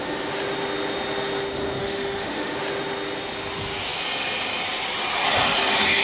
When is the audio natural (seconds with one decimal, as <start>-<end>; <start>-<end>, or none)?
0.0-1.8; 2.5-6.0